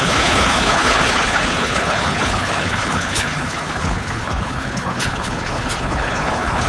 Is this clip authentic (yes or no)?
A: no